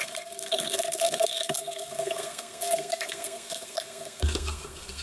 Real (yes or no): no